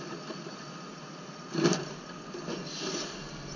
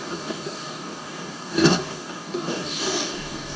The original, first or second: first